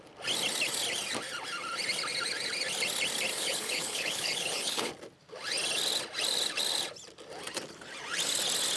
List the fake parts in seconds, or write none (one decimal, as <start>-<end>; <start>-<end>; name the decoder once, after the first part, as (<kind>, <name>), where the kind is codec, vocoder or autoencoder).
3.3-4.9 (codec, HILCodec)